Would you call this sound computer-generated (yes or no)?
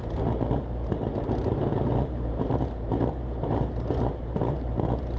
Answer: yes